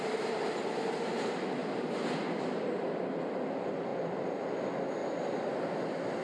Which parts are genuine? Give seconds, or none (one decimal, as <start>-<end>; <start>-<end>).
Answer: 0.0-6.2